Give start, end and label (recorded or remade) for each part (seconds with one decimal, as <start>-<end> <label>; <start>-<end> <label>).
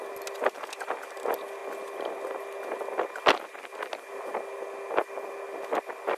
0.0-6.2 recorded